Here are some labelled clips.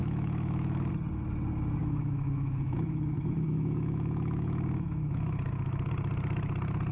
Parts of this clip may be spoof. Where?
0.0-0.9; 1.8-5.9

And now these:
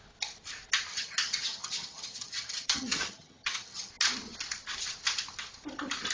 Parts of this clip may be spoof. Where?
0.9-3.9

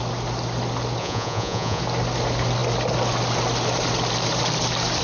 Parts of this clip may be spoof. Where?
1.0-1.8

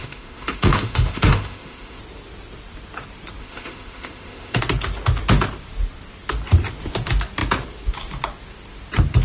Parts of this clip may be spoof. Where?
0.0-2.0; 3.4-4.6

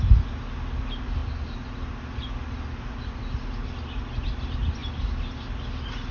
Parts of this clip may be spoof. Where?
none

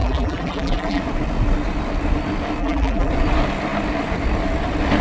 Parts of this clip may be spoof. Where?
0.0-1.0; 2.6-3.1

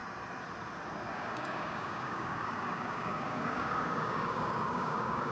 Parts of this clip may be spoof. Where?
1.1-5.3